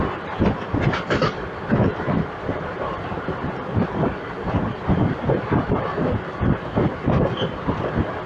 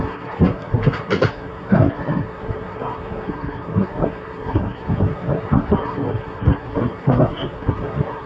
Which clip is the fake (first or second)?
second